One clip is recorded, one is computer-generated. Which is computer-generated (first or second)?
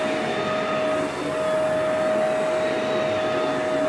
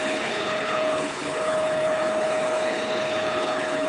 second